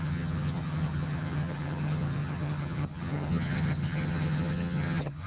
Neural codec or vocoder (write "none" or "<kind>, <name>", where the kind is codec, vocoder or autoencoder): vocoder, HiFi-GAN